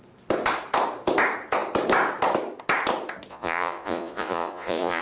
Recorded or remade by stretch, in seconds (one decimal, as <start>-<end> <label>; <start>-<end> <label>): 0.0-3.3 recorded; 3.3-5.0 remade